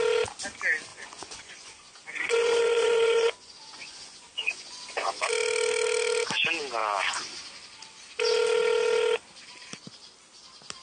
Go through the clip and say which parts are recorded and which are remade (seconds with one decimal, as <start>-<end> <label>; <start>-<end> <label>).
0.0-0.9 recorded; 0.9-5.3 remade; 5.3-10.8 recorded